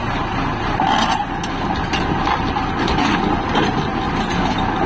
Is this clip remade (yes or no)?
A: no